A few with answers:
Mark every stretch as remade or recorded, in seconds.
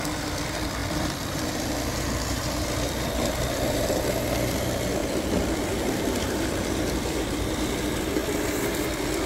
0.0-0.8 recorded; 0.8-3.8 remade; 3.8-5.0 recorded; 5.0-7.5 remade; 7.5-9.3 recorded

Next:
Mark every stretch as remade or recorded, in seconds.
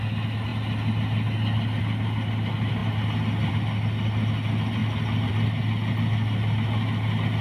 0.0-7.4 recorded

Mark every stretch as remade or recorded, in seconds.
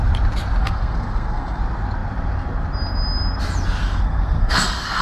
0.0-0.6 recorded; 0.6-1.6 remade; 1.6-3.8 recorded; 3.8-5.0 remade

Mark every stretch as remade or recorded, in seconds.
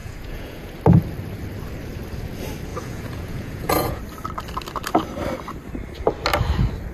0.0-0.7 remade; 0.7-2.7 recorded; 2.7-4.0 remade; 4.0-6.9 recorded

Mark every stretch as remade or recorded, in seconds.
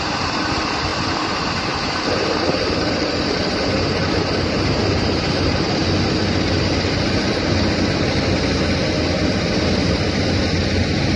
0.0-5.8 remade; 5.8-11.2 recorded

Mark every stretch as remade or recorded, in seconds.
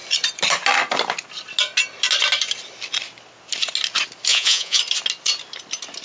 0.0-4.3 recorded; 4.3-4.8 remade; 4.8-6.0 recorded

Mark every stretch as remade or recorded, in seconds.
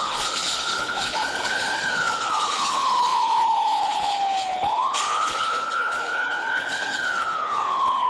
0.0-8.1 remade